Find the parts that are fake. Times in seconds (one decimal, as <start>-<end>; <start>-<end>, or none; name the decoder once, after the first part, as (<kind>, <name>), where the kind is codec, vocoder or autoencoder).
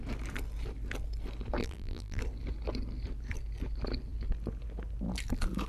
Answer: 1.6-2.2 (vocoder, BigVGAN v2)